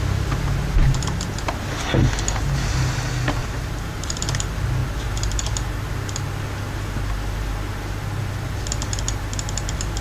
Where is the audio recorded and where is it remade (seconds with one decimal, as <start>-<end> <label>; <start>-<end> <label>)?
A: 0.0-3.4 recorded; 3.4-4.2 remade; 4.2-10.0 recorded